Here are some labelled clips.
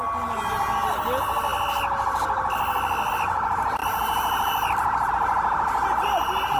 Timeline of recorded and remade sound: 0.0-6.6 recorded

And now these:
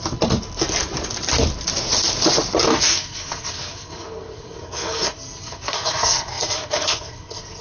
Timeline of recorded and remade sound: 0.0-2.7 recorded; 2.7-7.6 remade

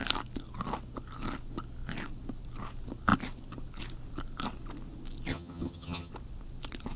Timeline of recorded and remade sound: 0.0-5.3 recorded; 5.3-6.1 remade; 6.1-7.0 recorded

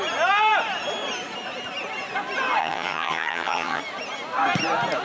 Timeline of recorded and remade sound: 0.0-2.6 recorded; 2.6-3.8 remade; 3.8-5.0 recorded